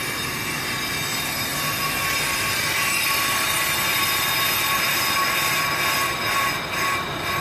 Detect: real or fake real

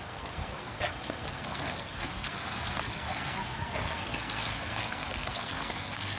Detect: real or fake fake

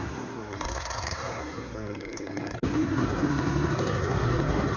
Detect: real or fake fake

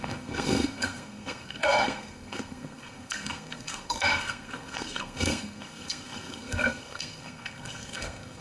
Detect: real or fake fake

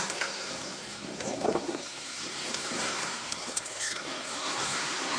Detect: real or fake fake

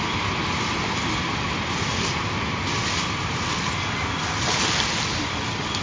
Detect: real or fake real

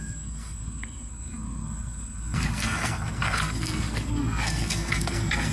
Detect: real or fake fake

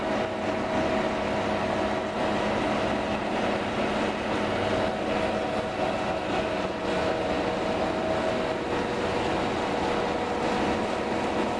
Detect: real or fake real